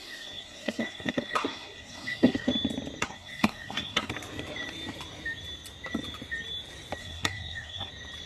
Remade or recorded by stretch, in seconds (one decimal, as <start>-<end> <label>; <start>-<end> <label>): 0.0-2.5 remade; 2.5-3.0 recorded; 3.0-4.1 remade; 4.1-7.0 recorded; 7.0-7.9 remade; 7.9-8.3 recorded

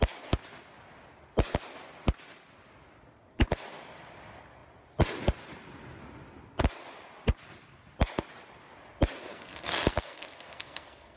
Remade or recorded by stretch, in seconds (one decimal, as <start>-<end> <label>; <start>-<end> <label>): 0.0-9.3 recorded; 9.3-11.2 remade

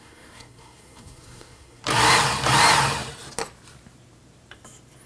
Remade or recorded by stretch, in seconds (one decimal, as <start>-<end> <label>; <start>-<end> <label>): 0.0-1.8 remade; 1.8-5.1 recorded

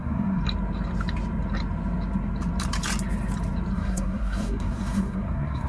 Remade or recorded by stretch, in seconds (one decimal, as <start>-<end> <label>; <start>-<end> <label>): 0.0-0.4 remade; 0.4-3.7 recorded; 3.7-5.7 remade

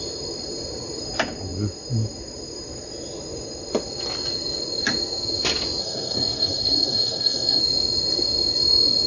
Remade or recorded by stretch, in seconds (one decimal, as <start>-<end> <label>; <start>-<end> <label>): 0.0-5.8 recorded; 5.8-7.6 remade; 7.6-9.1 recorded

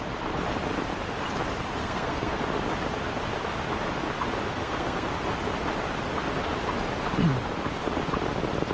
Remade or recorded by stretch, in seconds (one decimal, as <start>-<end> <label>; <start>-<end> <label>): 0.0-1.8 recorded; 1.8-2.4 remade; 2.4-4.6 recorded; 4.6-5.1 remade; 5.1-8.7 recorded